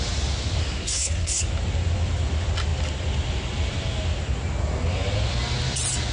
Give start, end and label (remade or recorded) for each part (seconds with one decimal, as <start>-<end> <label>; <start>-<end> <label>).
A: 0.0-0.6 recorded; 0.6-1.4 remade; 1.4-6.1 recorded